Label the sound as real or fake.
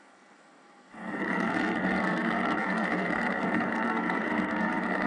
fake